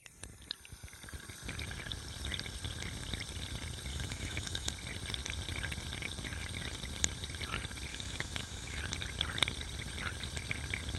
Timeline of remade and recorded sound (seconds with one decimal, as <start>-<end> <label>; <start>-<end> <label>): 0.0-3.9 recorded; 3.9-4.7 remade; 4.7-7.9 recorded; 7.9-8.8 remade; 8.8-11.0 recorded